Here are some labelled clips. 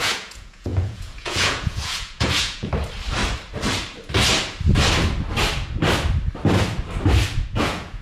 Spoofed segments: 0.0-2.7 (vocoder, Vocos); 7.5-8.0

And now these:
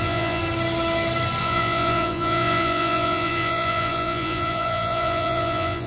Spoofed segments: 0.0-0.4 (vocoder, Vocos); 1.4-5.9

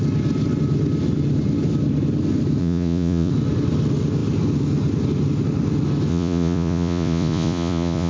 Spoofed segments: 2.6-3.3 (vocoder, Vocos); 6.1-8.1

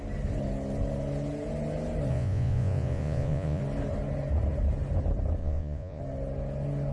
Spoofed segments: 2.1-3.6 (vocoder, Vocos); 5.4-6.0

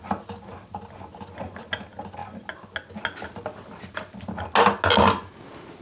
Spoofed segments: none

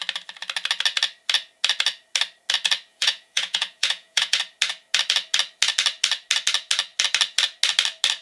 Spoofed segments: 2.9-4.4 (vocoder, Vocos)

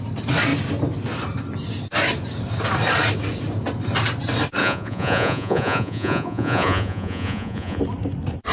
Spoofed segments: 4.6-7.8 (vocoder, Vocos)